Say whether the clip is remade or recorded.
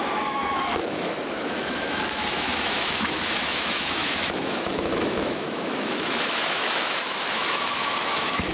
remade